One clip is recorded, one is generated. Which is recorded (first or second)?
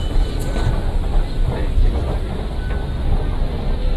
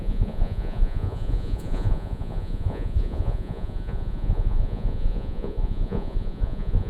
first